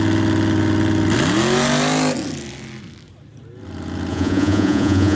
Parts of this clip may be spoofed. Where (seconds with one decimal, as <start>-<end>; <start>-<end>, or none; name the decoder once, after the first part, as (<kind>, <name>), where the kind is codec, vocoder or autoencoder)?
4.1-5.2 (vocoder, Vocos)